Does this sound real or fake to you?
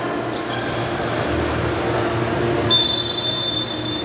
real